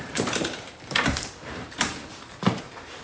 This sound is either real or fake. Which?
fake